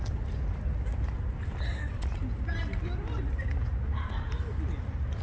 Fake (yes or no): no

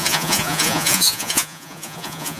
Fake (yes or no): yes